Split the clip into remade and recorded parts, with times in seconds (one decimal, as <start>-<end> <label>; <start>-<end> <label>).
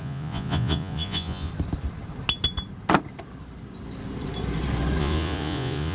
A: 0.0-1.5 remade; 1.5-5.0 recorded; 5.0-5.9 remade